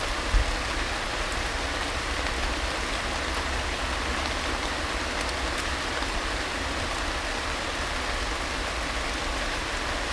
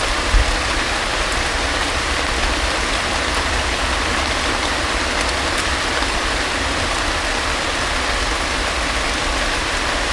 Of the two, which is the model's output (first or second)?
second